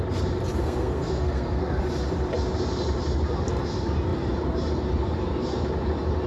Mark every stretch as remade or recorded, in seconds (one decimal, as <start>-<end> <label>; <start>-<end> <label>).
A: 0.0-0.6 recorded; 0.6-1.8 remade; 1.8-6.3 recorded